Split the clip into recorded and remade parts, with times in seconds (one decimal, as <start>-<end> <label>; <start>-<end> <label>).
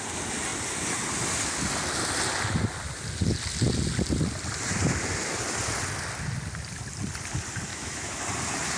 0.0-7.7 recorded; 7.7-8.2 remade; 8.2-8.8 recorded